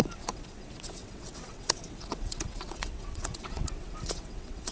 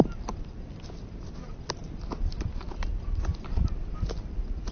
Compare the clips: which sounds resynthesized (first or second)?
first